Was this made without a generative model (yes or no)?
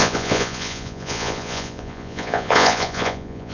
no